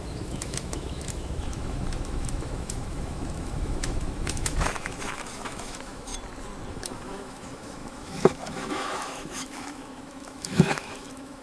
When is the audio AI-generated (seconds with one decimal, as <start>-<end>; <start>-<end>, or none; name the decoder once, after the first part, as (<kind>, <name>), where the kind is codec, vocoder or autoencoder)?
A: 0.0-6.1 (autoencoder, DAC-VAE); 6.7-11.4